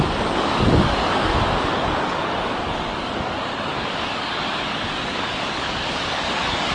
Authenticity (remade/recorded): remade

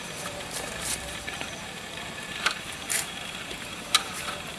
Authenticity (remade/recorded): remade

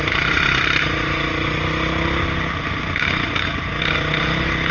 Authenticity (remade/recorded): recorded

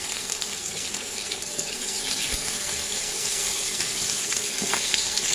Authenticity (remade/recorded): remade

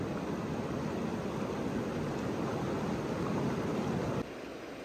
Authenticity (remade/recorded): recorded